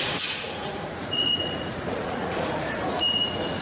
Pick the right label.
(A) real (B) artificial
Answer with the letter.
B